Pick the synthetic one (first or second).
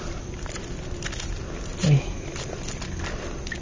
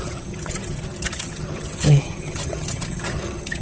second